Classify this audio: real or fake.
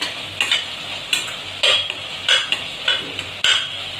real